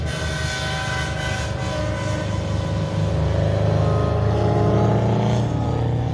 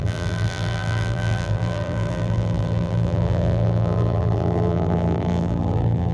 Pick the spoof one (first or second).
second